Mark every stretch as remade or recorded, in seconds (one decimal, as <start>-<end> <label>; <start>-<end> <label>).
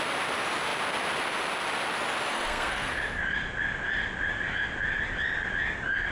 0.0-2.3 recorded; 2.3-2.9 remade; 2.9-6.1 recorded